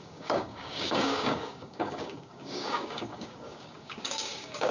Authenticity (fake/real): fake